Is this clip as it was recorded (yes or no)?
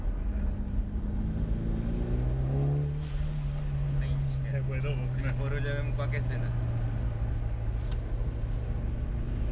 yes